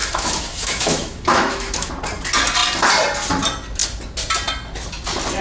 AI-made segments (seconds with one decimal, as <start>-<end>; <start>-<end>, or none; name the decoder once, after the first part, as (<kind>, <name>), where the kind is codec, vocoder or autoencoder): 0.0-1.9 (autoencoder, DAC-VAE)